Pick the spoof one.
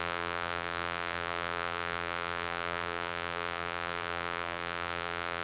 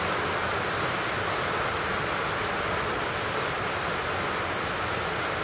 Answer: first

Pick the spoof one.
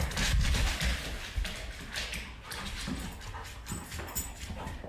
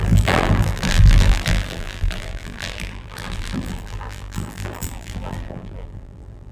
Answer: second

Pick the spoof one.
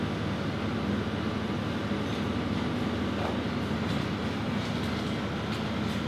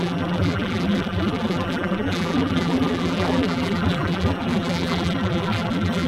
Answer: second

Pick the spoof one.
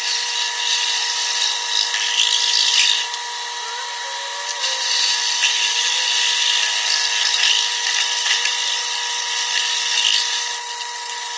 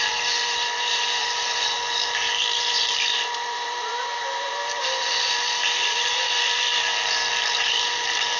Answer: second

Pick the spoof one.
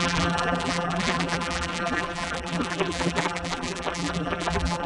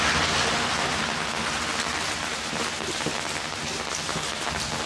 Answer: first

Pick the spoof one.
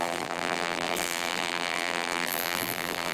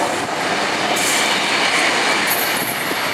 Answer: first